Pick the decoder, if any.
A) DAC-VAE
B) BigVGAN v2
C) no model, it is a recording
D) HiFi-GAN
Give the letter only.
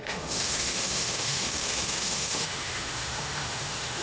A